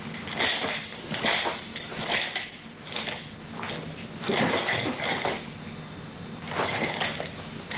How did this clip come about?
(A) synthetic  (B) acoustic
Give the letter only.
B